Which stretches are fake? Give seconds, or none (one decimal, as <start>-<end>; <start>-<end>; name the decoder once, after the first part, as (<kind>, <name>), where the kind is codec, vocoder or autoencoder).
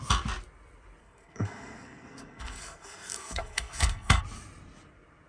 1.0-4.2 (codec, SNAC)